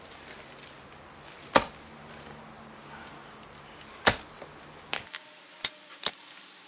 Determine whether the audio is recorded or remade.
recorded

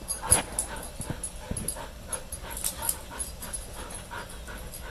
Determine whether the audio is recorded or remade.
recorded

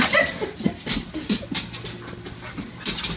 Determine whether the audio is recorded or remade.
recorded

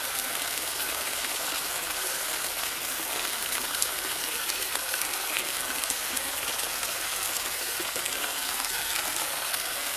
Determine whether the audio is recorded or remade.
remade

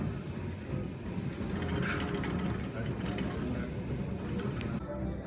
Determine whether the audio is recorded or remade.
recorded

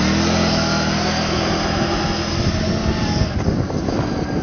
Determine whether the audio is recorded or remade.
recorded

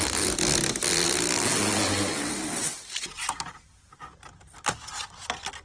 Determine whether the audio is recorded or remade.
recorded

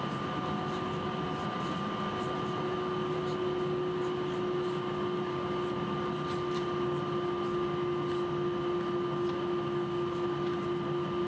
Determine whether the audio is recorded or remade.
recorded